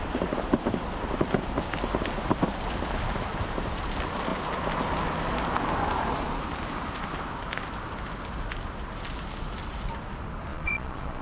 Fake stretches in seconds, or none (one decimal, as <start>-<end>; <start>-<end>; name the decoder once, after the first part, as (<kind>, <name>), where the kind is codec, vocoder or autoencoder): 10.5-11.2 (vocoder, Vocos)